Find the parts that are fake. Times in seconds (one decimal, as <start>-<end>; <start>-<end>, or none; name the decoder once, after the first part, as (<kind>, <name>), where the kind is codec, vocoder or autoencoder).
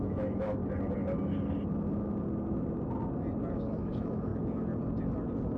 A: 0.0-0.6 (autoencoder, DAC-VAE); 3.5-4.3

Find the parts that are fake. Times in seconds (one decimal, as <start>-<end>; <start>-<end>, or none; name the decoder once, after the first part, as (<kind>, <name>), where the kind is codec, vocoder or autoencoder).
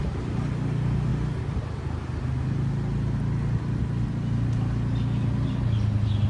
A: none